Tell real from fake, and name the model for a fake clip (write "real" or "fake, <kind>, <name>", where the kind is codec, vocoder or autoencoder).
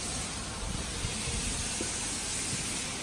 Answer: real